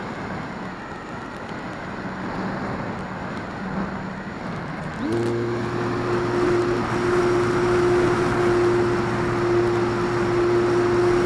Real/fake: real